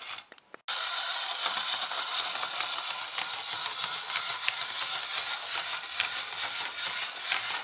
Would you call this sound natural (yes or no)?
yes